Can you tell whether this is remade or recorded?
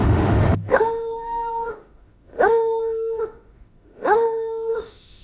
remade